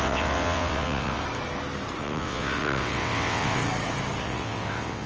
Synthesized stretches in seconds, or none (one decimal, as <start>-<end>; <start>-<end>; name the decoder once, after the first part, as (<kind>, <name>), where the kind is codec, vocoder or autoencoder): 0.0-1.2 (vocoder, WaveNeXt); 2.0-3.6; 4.2-5.1

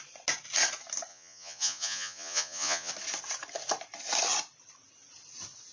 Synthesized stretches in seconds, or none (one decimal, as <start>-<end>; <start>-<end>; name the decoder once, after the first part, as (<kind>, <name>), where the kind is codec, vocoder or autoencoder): 1.1-2.9 (vocoder, Vocos)

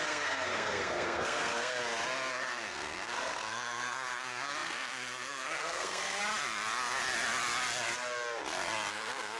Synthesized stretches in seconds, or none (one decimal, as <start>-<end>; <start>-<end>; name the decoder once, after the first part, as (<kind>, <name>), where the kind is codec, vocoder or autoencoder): 0.0-1.8 (codec, SNAC); 2.3-6.2; 8.9-9.4

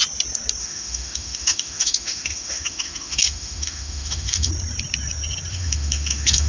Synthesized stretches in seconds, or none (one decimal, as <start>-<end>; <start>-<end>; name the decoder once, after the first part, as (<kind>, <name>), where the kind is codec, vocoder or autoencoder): 0.6-4.5 (autoencoder, DAC-VAE); 5.5-6.5

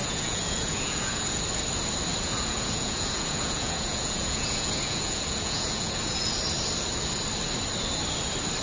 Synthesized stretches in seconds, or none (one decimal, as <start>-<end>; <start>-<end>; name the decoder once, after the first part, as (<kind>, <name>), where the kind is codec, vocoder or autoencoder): 0.0-1.4 (vocoder, Vocos); 2.1-6.4

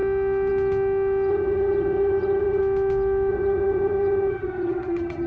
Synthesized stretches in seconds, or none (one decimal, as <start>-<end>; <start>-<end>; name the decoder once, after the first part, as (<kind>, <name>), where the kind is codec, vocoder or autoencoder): 1.3-2.6 (vocoder, HiFi-GAN); 3.3-5.3

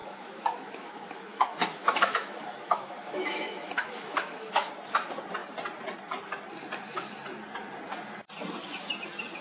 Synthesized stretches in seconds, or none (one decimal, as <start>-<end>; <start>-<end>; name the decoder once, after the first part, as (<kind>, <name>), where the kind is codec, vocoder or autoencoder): 0.0-4.7 (autoencoder, DAC-VAE)

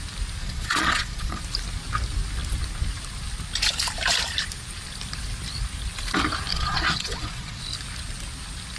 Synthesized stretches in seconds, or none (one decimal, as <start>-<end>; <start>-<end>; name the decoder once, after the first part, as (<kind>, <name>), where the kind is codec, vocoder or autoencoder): 0.4-1.4 (vocoder, Vocos); 6.5-7.6